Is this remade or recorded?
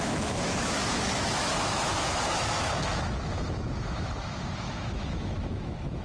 remade